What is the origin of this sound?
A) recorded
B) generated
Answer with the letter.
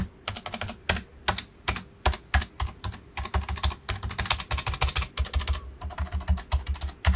A